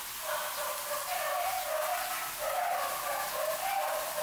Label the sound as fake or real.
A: real